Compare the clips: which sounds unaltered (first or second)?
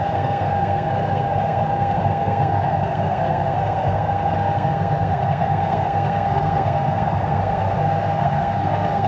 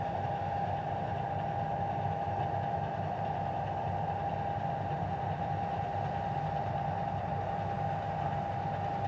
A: second